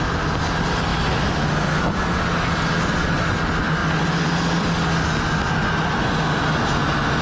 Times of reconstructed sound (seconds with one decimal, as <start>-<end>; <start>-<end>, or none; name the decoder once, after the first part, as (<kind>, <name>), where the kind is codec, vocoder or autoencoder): none